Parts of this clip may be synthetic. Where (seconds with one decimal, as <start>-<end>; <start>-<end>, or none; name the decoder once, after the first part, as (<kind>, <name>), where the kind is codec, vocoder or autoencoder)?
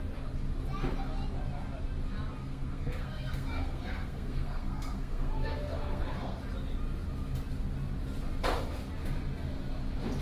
2.4-6.4 (codec, SNAC)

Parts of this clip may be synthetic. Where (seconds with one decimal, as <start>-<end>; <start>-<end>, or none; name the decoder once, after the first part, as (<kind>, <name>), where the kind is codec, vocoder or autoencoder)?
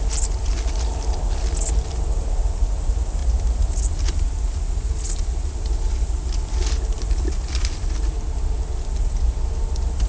none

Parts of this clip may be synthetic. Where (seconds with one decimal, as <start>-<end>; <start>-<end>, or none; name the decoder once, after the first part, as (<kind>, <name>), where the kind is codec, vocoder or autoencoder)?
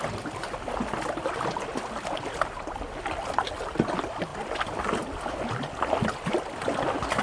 none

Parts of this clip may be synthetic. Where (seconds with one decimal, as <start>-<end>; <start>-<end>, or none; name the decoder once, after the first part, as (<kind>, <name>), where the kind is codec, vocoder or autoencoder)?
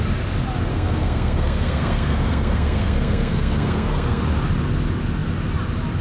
0.7-4.2 (codec, SNAC)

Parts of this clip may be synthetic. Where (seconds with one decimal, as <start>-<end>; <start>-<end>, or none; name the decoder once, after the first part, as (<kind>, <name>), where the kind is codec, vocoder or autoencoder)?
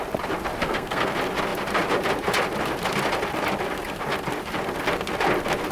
0.6-1.1 (codec, SNAC)